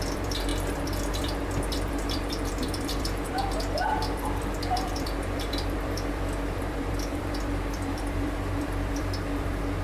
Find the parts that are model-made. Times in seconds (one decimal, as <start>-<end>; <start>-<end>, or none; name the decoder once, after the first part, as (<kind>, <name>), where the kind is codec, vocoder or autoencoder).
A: 0.0-9.8 (vocoder, BigVGAN v2)